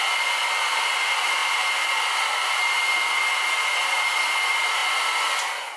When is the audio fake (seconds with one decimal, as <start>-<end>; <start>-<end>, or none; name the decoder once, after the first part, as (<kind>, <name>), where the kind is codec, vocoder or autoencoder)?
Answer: none

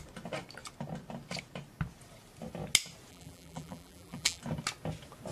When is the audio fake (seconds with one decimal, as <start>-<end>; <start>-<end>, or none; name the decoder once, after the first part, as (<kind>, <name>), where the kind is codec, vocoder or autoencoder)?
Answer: 3.1-4.4 (vocoder, BigVGAN v2)

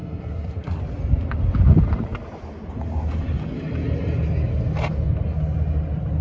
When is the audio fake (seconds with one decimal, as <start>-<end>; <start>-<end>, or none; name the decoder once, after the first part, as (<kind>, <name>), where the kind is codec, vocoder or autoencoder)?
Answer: 0.0-0.8 (codec, SNAC)

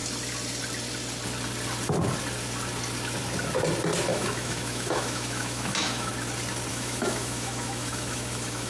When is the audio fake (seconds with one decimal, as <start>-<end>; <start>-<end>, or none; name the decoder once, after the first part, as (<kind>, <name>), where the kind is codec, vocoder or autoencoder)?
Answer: 4.1-6.1 (autoencoder, DAC-VAE); 6.7-8.7

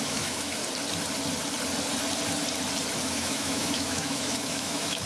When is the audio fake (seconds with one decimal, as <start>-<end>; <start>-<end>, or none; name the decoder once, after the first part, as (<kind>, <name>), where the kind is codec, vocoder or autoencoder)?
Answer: 0.0-0.6 (autoencoder, DAC-VAE); 3.0-5.1

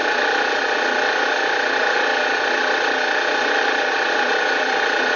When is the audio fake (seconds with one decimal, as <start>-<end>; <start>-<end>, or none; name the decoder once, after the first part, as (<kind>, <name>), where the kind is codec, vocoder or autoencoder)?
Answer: 0.0-5.2 (vocoder, Vocos)

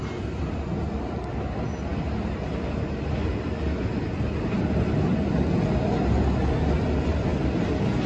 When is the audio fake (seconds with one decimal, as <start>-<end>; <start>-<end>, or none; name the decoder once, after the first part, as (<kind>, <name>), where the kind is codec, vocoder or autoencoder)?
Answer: none

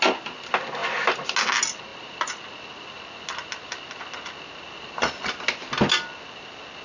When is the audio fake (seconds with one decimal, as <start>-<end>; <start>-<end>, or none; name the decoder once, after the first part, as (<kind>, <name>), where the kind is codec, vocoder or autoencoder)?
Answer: none